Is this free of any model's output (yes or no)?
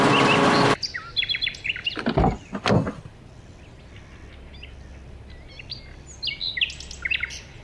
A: yes